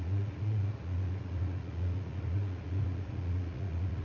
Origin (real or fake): fake